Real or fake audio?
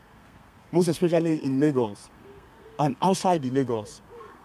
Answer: fake